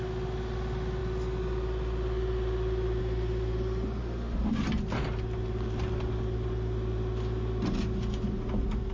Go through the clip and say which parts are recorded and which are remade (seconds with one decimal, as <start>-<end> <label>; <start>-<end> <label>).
0.0-4.0 recorded; 4.0-4.5 remade; 4.5-8.9 recorded